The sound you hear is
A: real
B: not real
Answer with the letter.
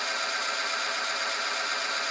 A